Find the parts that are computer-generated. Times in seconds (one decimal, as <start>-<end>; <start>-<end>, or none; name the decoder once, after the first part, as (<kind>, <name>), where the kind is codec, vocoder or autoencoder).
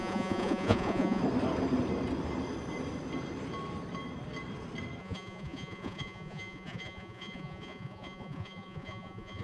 0.0-1.2 (vocoder, Vocos); 5.0-9.4